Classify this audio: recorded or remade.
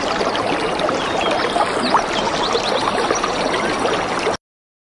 recorded